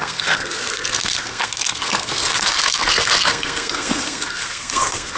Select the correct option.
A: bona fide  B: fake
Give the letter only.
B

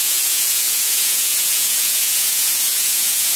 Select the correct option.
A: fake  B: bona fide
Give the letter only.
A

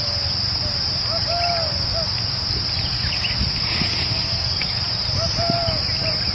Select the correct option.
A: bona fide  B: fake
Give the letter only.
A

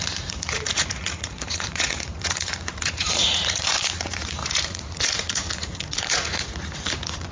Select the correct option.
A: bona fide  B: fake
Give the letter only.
B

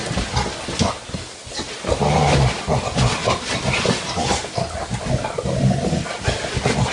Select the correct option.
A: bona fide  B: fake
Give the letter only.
A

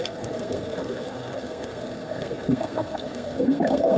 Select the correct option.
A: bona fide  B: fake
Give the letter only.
B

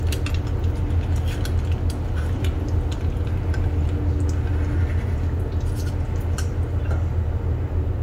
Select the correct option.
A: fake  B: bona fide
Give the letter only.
B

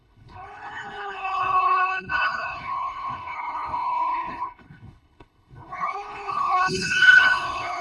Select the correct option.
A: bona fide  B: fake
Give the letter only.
B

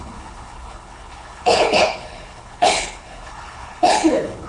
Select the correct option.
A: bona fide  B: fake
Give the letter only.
B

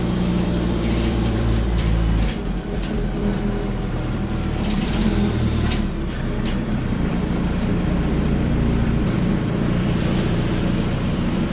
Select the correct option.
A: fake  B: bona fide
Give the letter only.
A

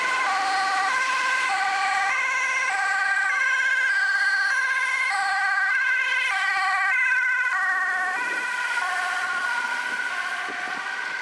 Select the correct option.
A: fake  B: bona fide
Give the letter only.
A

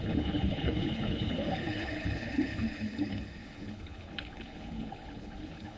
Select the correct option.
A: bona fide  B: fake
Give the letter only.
B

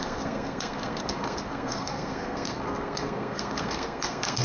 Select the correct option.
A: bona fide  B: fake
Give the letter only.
B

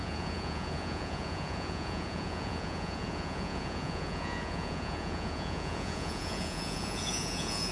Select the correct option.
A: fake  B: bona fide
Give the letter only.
A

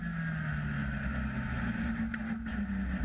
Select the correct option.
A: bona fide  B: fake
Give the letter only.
A